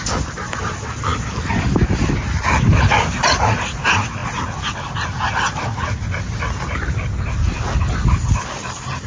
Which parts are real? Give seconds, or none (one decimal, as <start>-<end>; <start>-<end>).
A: 0.0-9.1